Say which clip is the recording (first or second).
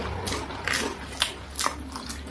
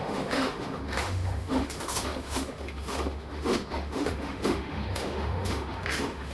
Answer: first